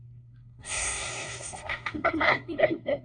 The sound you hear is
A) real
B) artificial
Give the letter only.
B